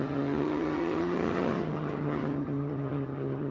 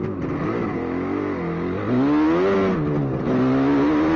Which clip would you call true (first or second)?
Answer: second